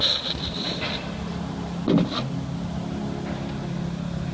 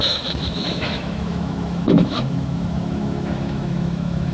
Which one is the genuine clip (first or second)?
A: first